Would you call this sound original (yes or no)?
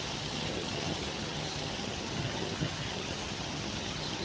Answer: no